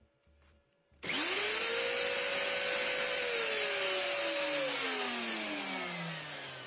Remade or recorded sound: recorded